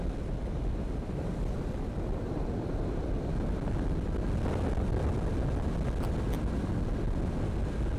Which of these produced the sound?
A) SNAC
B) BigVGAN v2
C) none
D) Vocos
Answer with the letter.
C